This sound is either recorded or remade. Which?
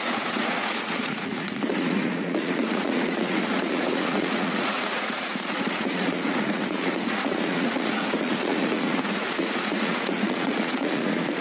remade